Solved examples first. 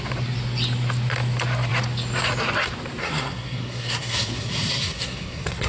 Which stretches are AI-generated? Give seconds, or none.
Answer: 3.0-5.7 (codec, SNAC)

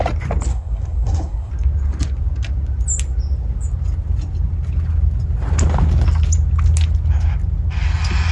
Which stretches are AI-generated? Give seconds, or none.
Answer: 0.5-1.5 (codec, SNAC)